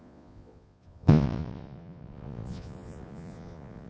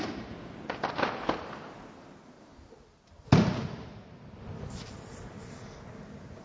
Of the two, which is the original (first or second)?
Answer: second